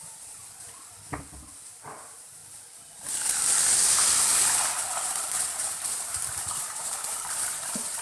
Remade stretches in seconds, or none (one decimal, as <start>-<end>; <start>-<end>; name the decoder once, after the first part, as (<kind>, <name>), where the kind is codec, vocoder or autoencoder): 0.0-0.4 (vocoder, BigVGAN v2); 1.9-2.4; 3.9-4.3; 5.2-8.0